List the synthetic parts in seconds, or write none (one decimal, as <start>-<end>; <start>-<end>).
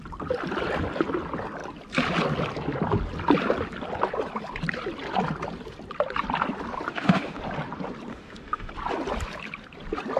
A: 6.9-7.4; 8.1-8.7